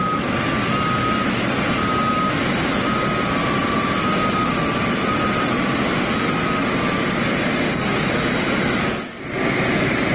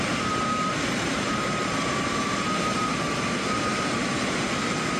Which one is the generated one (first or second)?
second